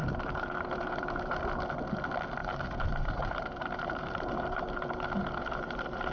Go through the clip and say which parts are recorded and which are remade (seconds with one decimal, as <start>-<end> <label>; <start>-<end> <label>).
0.0-1.5 remade; 1.5-2.4 recorded; 2.4-6.1 remade